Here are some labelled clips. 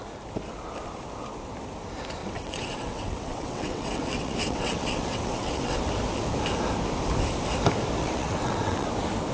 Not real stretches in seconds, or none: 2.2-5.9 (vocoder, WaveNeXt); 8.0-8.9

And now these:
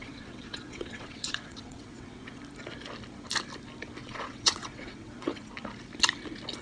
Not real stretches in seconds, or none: 0.0-2.4 (vocoder, WaveNeXt); 4.0-5.5

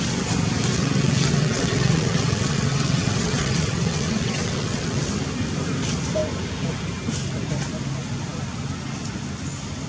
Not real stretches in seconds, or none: 0.7-5.1 (vocoder, WaveNeXt)

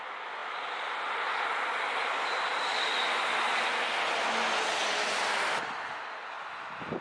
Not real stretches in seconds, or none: none

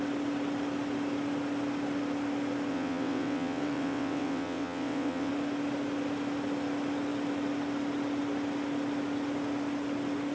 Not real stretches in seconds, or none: 2.7-5.3 (vocoder, WaveNeXt)

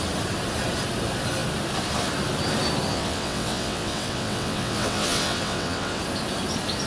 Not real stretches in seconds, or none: 2.9-6.0 (vocoder, WaveNeXt)